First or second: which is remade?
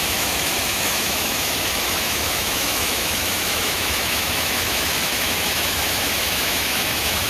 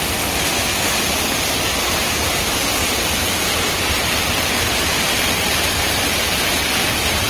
first